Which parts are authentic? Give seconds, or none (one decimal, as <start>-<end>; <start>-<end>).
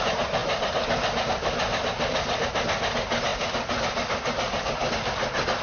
0.0-5.6